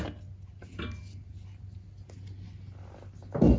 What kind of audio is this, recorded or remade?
recorded